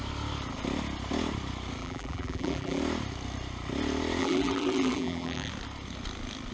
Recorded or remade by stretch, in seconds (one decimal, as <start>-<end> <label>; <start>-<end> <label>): 0.0-1.8 recorded; 1.8-2.8 remade; 2.8-4.2 recorded; 4.2-5.5 remade; 5.5-6.5 recorded